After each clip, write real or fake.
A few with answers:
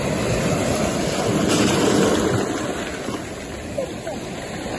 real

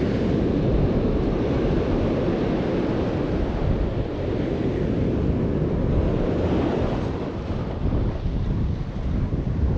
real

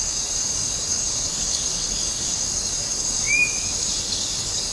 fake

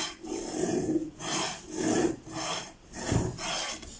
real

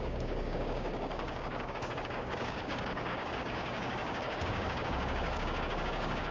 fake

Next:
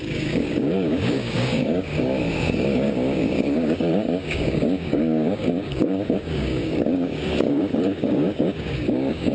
fake